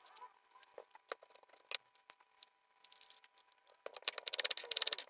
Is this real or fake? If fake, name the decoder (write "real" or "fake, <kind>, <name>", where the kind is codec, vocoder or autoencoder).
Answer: real